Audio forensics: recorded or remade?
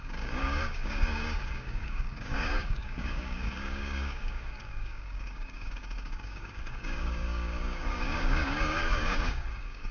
remade